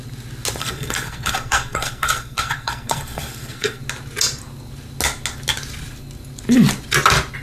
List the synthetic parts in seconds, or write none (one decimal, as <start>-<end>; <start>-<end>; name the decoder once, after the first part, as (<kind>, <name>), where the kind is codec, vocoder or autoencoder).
0.6-3.8 (codec, SNAC)